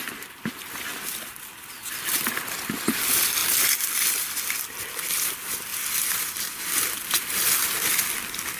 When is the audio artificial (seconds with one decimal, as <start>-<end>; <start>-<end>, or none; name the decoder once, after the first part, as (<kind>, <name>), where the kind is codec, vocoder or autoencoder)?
3.4-4.8 (vocoder, BigVGAN v2); 5.7-7.3